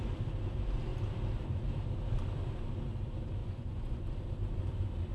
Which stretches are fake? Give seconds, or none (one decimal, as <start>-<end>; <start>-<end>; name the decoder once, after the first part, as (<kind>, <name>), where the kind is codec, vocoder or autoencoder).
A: 3.4-4.0 (vocoder, Vocos)